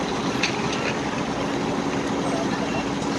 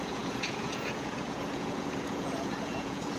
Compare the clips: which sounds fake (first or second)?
second